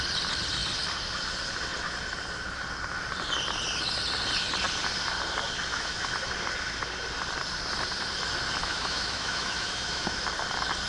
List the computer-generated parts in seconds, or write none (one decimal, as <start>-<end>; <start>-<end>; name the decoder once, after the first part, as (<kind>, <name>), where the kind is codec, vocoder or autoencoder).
5.7-6.3 (autoencoder, DAC-VAE); 8.6-10.2